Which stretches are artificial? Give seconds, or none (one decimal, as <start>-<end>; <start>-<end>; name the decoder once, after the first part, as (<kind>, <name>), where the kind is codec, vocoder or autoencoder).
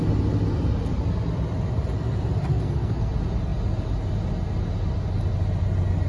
2.5-3.1 (codec, SNAC)